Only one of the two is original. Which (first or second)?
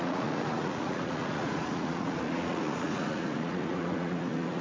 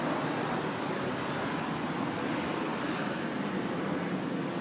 second